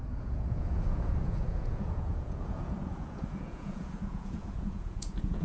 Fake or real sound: fake